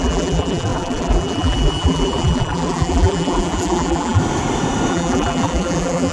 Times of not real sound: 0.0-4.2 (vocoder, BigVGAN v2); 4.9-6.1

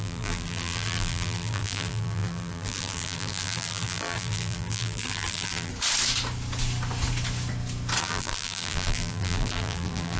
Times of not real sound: 0.0-5.7 (vocoder, BigVGAN v2); 8.0-10.2

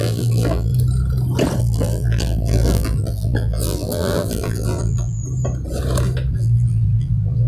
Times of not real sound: 0.0-0.7 (vocoder, BigVGAN v2); 1.6-5.2; 6.3-7.5

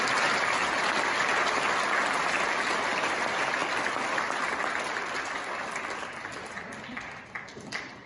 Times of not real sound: none

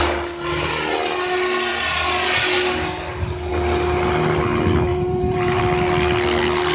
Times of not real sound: 4.9-5.6 (vocoder, BigVGAN v2)

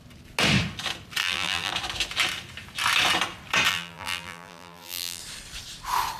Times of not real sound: 1.2-1.7 (vocoder, BigVGAN v2); 3.7-5.2

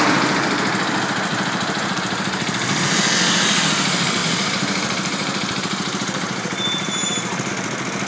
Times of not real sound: 1.3-2.0 (vocoder, BigVGAN v2); 4.2-7.5

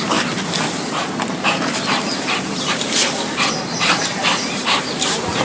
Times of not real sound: 2.1-5.4 (vocoder, BigVGAN v2)